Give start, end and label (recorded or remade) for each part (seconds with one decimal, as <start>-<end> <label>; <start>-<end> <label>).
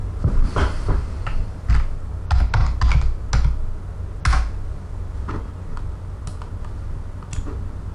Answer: 0.0-1.7 remade; 1.7-7.9 recorded